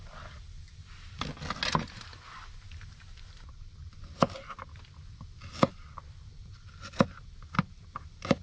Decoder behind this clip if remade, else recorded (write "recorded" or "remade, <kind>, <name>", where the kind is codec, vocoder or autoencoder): recorded